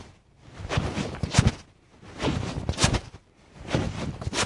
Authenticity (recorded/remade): remade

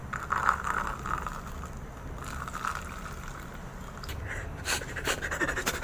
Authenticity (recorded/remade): recorded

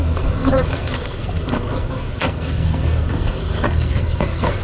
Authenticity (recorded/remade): remade